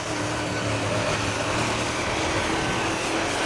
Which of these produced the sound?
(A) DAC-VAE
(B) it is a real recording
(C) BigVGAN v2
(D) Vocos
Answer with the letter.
B